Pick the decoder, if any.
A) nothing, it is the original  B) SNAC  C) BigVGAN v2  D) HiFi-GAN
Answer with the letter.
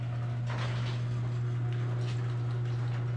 A